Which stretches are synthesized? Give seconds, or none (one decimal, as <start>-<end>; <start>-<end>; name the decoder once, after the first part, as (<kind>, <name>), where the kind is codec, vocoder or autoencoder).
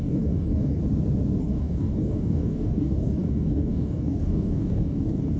0.0-0.8 (codec, DAC); 1.4-5.4